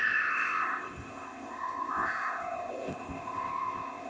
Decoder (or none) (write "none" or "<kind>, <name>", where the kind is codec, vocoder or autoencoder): codec, ZipCodec